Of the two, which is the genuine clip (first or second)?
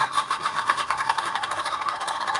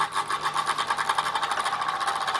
second